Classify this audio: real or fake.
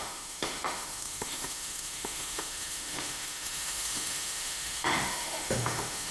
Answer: fake